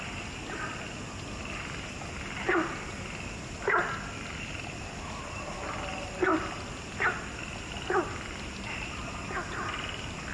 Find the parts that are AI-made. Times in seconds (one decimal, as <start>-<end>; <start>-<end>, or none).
none